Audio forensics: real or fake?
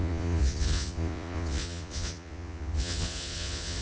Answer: fake